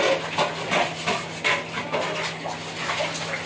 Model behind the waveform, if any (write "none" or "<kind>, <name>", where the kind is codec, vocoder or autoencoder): none